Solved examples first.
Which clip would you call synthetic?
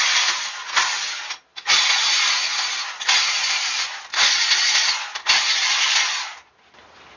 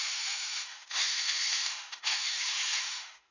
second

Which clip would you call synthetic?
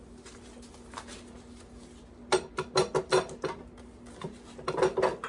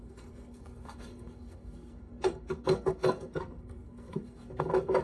second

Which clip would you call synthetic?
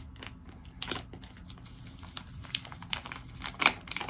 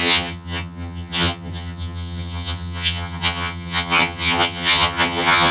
second